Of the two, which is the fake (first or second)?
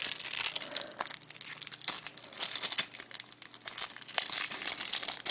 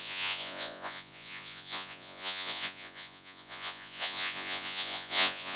second